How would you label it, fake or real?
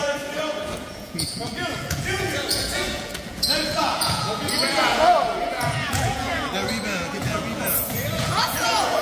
fake